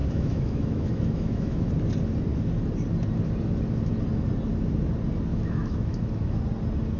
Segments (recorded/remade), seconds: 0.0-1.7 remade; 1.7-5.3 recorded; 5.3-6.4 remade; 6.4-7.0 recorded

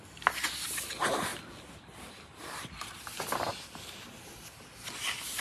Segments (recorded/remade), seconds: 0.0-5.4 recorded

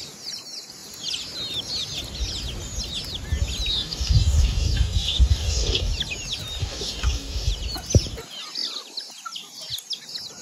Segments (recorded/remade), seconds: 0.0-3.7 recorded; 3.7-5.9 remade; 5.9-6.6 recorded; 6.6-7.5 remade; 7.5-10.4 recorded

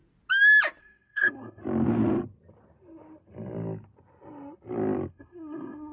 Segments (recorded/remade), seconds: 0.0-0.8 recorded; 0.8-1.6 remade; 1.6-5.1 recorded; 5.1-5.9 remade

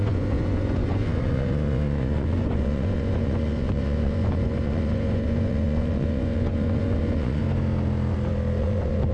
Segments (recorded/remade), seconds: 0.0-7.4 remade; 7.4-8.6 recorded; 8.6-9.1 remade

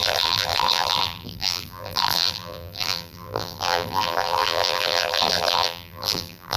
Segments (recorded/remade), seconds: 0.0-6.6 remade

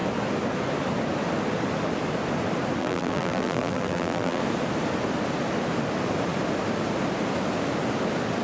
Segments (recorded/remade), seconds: 0.0-2.8 recorded; 2.8-4.4 remade; 4.4-8.4 recorded

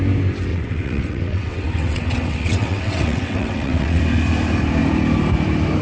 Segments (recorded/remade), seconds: 0.0-0.5 recorded; 0.5-4.0 remade; 4.0-5.8 recorded